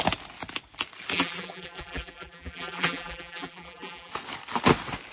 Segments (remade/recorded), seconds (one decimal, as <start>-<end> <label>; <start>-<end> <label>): 0.0-1.1 recorded; 1.1-4.1 remade; 4.1-5.1 recorded